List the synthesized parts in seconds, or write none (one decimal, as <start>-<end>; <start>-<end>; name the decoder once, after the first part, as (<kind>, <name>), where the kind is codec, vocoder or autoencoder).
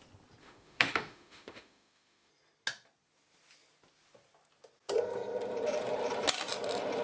0.4-2.3 (autoencoder, DAC-VAE)